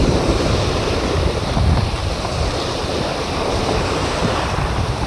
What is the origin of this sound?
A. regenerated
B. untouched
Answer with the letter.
A